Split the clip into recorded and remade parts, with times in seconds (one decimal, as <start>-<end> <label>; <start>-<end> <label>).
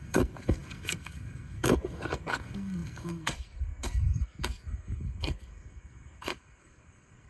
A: 0.0-7.3 remade